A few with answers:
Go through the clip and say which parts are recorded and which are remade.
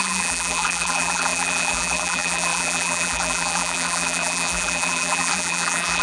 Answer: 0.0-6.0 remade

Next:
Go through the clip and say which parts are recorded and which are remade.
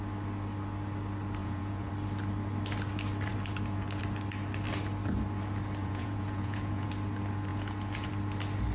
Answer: 0.0-1.4 recorded; 1.4-1.9 remade; 1.9-5.8 recorded; 5.8-6.9 remade; 6.9-7.5 recorded; 7.5-8.1 remade; 8.1-8.7 recorded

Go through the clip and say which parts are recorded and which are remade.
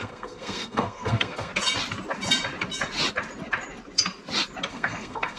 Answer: 0.0-1.5 remade; 1.5-4.7 recorded; 4.7-5.4 remade